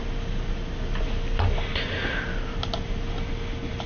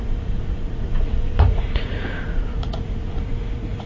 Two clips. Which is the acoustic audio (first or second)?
first